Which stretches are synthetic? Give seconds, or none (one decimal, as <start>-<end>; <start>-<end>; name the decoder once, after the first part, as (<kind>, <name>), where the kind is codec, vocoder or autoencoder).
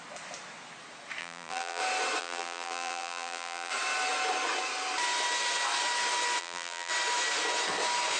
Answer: 1.2-1.8 (vocoder, BigVGAN v2); 2.2-3.7; 6.4-6.9